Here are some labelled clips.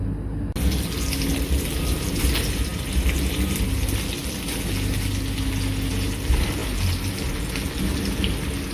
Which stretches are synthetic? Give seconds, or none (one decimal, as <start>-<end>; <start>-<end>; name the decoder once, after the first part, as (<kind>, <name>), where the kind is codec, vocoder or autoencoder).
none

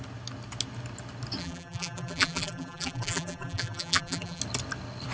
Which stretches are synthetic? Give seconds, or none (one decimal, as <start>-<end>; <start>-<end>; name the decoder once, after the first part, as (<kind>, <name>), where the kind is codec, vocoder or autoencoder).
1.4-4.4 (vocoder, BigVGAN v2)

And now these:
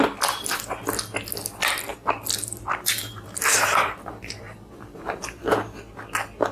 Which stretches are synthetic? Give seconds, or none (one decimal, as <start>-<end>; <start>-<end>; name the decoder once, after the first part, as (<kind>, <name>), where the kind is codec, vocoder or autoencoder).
1.9-5.4 (vocoder, BigVGAN v2)